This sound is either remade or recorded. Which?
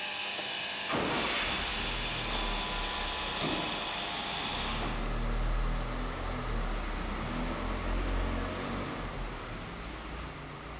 recorded